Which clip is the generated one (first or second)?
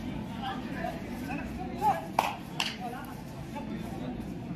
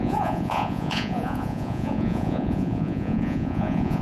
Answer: second